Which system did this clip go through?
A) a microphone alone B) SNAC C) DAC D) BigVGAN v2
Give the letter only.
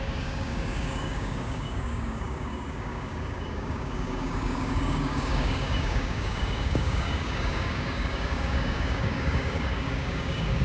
C